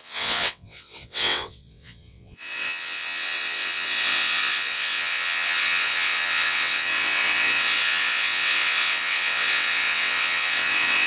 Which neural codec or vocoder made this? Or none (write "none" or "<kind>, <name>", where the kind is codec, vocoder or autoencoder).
vocoder, WaveNeXt